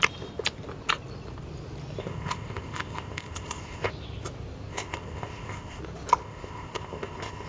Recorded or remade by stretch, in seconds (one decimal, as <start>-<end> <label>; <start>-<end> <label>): 0.0-2.0 recorded; 2.0-3.9 remade; 3.9-4.7 recorded; 4.7-5.8 remade; 5.8-6.2 recorded; 6.2-7.5 remade